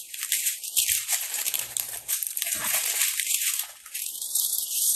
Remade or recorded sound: remade